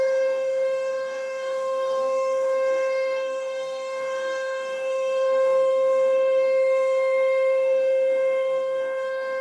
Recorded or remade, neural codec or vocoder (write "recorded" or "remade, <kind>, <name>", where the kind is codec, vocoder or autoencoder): remade, codec, DAC